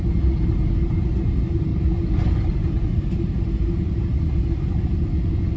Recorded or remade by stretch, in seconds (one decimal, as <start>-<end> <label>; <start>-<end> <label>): 0.0-1.7 recorded; 1.7-5.1 remade; 5.1-5.6 recorded